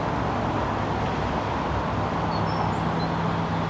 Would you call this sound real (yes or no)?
yes